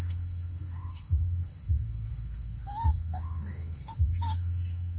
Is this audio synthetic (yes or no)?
yes